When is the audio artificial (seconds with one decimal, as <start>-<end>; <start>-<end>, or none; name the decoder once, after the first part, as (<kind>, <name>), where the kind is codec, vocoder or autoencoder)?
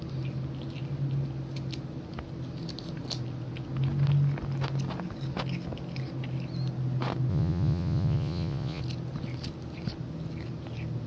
7.3-8.8 (vocoder, Vocos)